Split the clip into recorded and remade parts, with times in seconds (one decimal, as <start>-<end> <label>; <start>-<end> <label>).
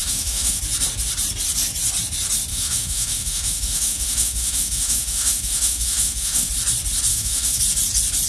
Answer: 0.0-0.6 remade; 0.6-2.5 recorded; 2.5-6.5 remade; 6.5-7.1 recorded; 7.1-7.6 remade; 7.6-8.3 recorded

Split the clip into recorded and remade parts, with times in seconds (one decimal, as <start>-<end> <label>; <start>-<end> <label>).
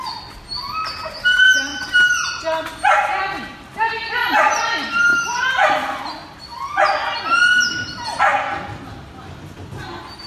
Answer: 0.0-10.3 recorded